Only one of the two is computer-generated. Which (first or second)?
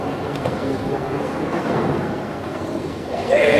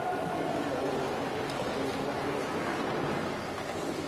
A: first